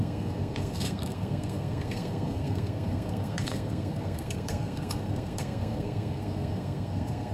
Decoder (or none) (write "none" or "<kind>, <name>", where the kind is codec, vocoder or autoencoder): codec, SNAC